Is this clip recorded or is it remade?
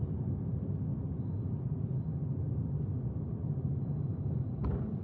recorded